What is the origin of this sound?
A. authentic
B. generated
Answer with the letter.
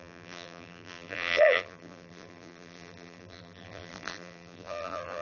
B